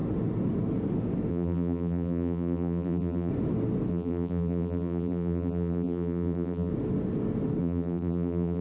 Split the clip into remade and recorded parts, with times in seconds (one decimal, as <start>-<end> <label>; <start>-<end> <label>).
0.0-1.3 recorded; 1.3-3.3 remade; 3.3-3.9 recorded; 3.9-6.7 remade; 6.7-7.6 recorded; 7.6-8.6 remade